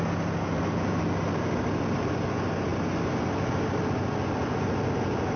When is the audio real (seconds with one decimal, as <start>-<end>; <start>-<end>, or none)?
0.0-5.4